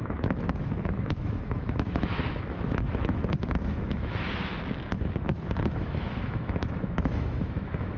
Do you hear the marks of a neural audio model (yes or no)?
yes